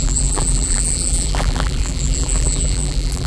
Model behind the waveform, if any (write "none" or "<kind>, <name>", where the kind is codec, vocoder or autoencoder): vocoder, BigVGAN v2